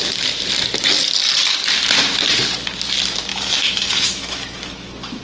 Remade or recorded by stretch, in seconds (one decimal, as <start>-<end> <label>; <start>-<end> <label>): 0.0-3.3 recorded; 3.3-5.2 remade